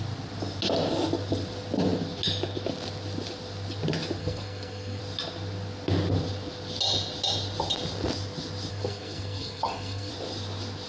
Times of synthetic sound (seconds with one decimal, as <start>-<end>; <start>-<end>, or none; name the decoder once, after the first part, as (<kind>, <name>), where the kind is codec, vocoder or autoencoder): 4.2-5.0 (codec, SNAC); 8.7-10.1